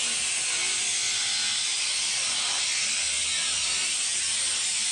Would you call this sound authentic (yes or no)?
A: yes